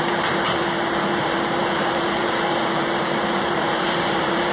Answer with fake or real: fake